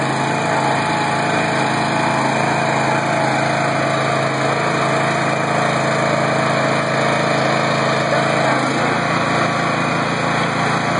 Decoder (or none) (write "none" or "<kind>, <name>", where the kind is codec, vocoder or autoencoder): none